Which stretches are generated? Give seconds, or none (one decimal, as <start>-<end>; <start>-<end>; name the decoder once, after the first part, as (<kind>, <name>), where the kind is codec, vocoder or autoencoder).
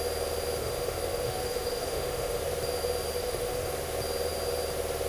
0.6-2.4 (autoencoder, DAC-VAE); 3.2-3.7